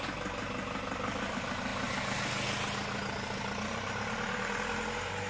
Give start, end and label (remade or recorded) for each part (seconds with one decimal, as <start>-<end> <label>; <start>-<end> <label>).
0.0-5.3 recorded